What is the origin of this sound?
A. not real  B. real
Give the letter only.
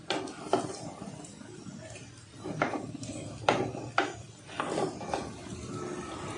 B